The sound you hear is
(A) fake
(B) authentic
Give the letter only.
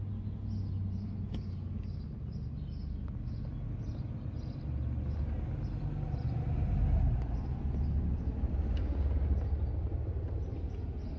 B